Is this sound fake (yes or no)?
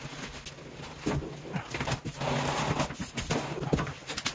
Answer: no